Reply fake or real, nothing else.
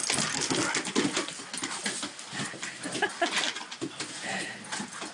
real